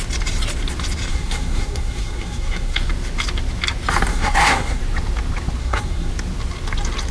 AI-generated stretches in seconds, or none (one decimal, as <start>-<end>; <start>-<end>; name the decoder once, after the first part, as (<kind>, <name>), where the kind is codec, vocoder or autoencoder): 1.1-2.9 (codec, SNAC); 4.1-4.8; 5.6-6.1